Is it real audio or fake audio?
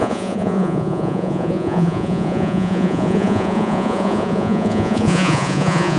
fake